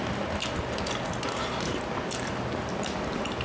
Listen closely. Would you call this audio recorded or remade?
recorded